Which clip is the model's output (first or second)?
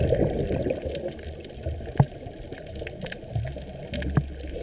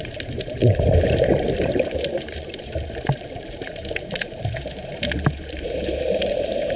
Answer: second